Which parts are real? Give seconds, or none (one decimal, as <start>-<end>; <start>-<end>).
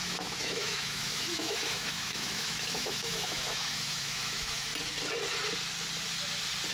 4.7-6.7